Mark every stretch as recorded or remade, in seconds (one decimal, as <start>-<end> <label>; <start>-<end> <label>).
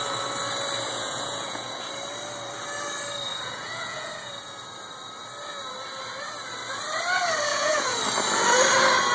0.0-0.9 recorded; 0.9-1.8 remade; 1.8-3.3 recorded; 3.3-4.5 remade; 4.5-7.5 recorded; 7.5-8.0 remade; 8.0-9.1 recorded